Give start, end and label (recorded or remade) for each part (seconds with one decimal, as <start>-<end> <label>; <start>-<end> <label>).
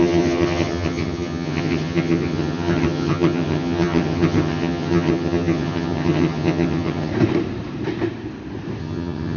0.0-7.1 remade; 7.1-8.8 recorded; 8.8-9.4 remade